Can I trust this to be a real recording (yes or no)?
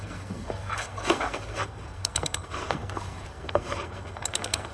no